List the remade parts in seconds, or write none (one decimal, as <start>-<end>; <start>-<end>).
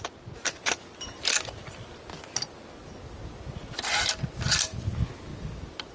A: none